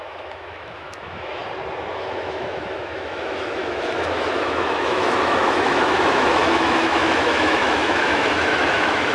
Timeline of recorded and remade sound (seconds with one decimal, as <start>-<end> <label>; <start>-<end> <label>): 0.0-1.4 remade; 1.4-1.9 recorded; 1.9-9.1 remade